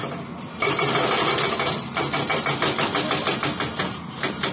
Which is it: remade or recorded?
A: recorded